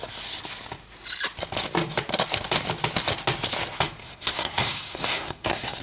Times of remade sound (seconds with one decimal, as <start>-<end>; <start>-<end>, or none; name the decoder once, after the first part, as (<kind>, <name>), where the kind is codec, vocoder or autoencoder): 4.0-5.8 (codec, SNAC)